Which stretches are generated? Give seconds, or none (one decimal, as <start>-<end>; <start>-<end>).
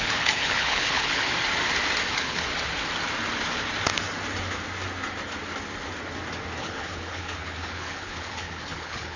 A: 0.0-1.3; 2.1-2.5; 6.6-9.2